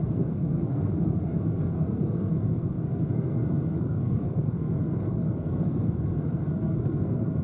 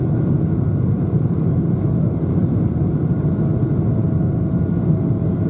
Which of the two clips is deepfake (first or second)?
first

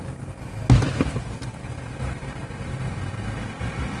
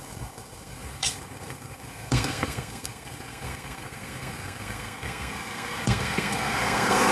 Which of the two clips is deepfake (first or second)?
second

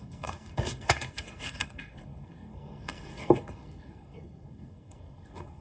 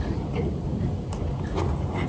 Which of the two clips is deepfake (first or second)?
first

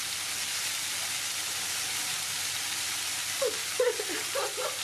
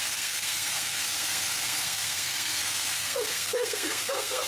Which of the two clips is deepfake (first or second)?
second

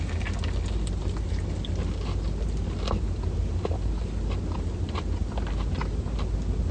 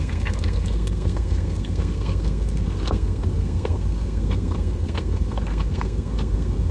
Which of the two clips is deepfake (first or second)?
second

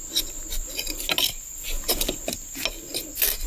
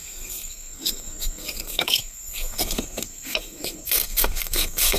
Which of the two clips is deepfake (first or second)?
second